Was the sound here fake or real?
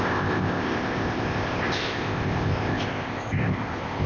fake